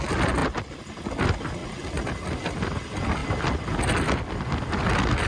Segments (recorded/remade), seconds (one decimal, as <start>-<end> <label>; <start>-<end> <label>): 0.0-5.3 recorded